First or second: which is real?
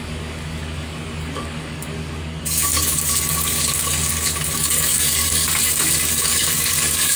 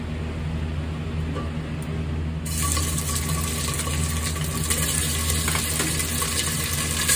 second